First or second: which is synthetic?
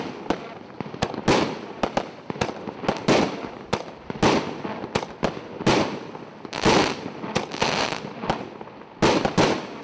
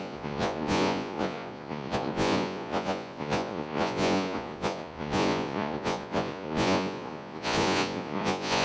second